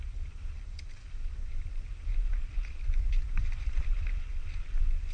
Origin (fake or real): fake